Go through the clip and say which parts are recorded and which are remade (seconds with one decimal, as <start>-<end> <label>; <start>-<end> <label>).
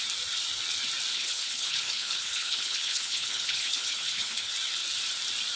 0.0-1.1 recorded; 1.1-4.5 remade; 4.5-5.6 recorded